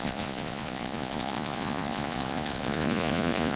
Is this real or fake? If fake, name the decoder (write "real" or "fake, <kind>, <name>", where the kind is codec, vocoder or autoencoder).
fake, vocoder, Vocos